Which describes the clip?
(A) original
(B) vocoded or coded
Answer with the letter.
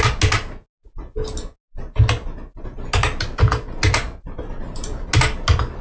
A